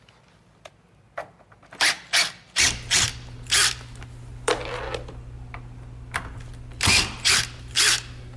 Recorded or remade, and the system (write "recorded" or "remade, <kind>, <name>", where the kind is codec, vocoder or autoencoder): recorded